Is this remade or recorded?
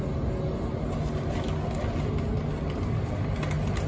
recorded